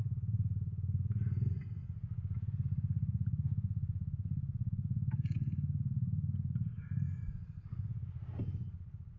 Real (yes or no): yes